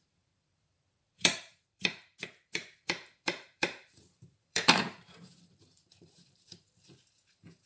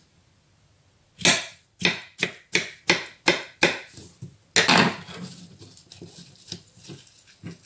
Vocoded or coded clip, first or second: first